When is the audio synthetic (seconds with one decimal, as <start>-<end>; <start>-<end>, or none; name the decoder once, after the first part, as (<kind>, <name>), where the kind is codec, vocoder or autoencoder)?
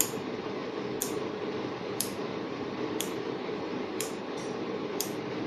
0.0-0.6 (vocoder, BigVGAN v2); 1.8-5.5